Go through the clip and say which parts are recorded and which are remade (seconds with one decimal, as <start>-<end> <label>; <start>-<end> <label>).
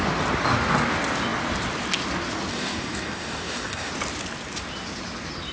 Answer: 0.0-2.5 recorded; 2.5-3.9 remade; 3.9-5.5 recorded